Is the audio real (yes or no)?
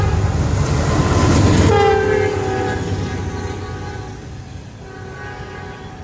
yes